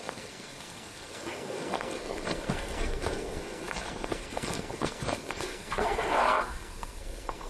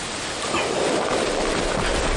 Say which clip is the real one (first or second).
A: second